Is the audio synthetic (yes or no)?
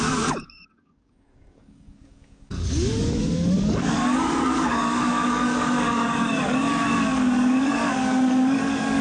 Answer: yes